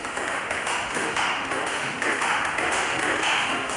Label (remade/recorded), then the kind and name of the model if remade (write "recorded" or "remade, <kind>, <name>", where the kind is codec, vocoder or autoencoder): remade, autoencoder, DAC-VAE